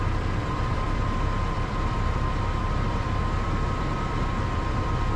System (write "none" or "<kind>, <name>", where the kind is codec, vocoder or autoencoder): vocoder, BigVGAN v2